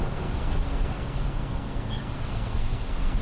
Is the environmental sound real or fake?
fake